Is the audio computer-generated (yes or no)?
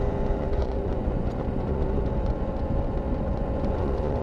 yes